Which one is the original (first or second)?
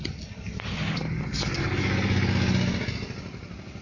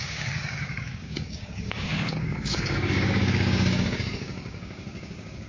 first